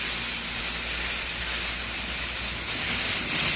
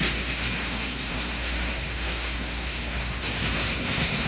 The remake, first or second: second